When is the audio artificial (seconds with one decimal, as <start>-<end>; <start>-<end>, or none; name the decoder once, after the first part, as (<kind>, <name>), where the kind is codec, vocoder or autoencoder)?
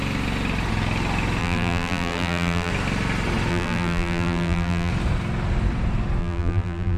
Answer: 1.4-2.7 (vocoder, BigVGAN v2); 3.5-4.9; 6.2-7.0